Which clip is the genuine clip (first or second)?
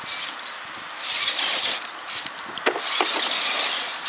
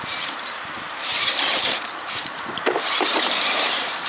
first